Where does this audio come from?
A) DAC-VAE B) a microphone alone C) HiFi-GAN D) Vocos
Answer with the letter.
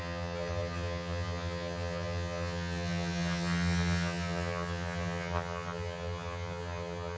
C